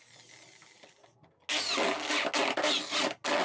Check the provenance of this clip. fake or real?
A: real